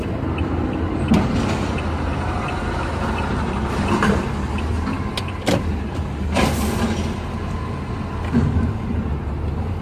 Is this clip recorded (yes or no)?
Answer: no